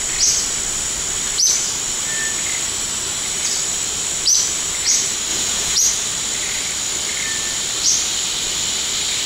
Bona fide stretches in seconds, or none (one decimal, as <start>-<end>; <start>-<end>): 0.0-5.3; 5.8-9.3